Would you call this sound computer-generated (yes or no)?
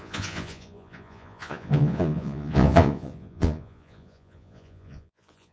yes